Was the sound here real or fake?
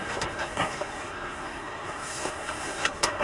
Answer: fake